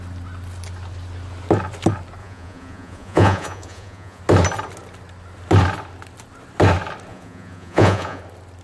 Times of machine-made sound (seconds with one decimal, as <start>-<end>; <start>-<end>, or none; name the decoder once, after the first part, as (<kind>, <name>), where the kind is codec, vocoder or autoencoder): 2.2-4.2 (vocoder, Vocos); 7.1-8.2